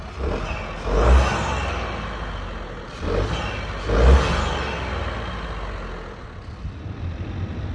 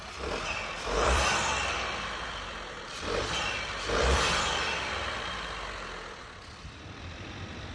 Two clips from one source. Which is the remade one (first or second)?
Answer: second